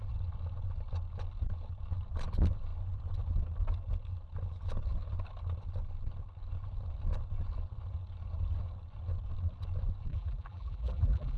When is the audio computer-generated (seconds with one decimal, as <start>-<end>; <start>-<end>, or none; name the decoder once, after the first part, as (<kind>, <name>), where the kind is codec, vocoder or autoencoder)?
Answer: 10.1-11.4 (vocoder, BigVGAN v2)

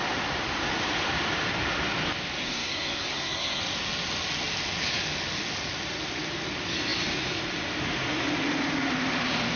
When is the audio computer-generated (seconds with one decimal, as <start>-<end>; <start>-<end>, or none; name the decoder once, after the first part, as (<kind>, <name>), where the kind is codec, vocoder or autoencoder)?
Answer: 2.4-3.6 (codec, SNAC)

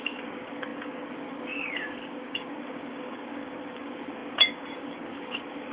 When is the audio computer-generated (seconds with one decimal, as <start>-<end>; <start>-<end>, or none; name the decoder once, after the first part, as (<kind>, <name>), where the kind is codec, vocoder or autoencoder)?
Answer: 0.0-5.7 (codec, DAC)

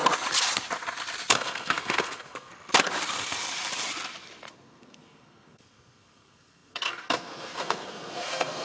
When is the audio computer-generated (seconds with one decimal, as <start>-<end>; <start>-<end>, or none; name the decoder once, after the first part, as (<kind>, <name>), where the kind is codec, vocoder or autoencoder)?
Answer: 1.3-2.5 (codec, SNAC); 4.5-8.6